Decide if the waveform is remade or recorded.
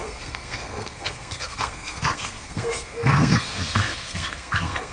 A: remade